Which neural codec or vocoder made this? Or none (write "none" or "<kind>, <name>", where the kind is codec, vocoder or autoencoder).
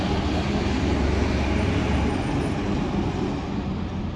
none